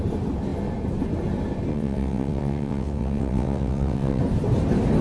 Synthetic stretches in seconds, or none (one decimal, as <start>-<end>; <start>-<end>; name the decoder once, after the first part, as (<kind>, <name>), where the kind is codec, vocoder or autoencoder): 1.7-4.2 (vocoder, WaveNeXt)